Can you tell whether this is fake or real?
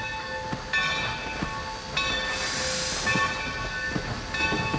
real